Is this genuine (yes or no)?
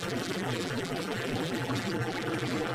no